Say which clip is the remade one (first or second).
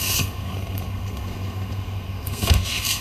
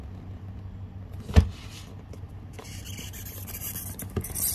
first